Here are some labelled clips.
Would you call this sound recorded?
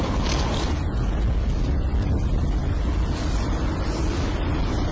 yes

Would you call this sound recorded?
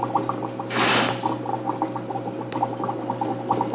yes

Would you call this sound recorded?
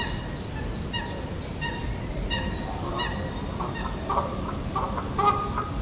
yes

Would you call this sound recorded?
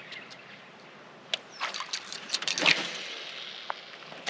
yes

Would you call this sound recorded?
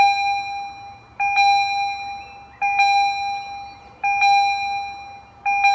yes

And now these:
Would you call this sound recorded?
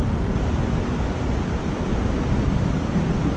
yes